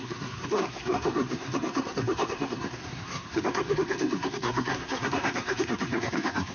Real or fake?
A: fake